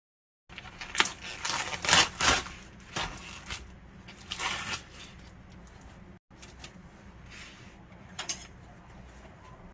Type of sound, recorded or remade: recorded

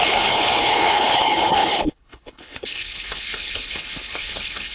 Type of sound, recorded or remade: remade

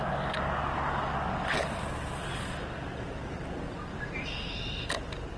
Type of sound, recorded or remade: recorded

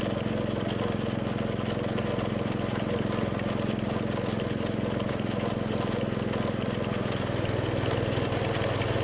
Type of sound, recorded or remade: recorded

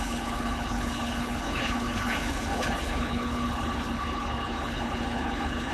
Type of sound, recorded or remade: remade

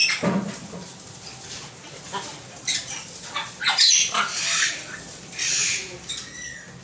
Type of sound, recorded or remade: recorded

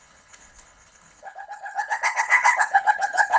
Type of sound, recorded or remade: remade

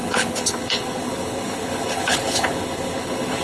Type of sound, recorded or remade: remade